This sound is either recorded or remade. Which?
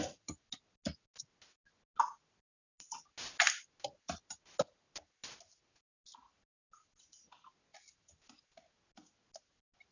recorded